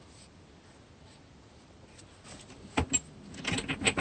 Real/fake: real